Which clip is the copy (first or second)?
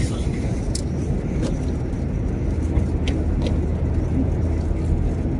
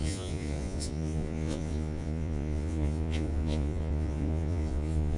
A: second